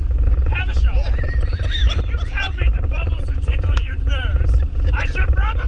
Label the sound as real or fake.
fake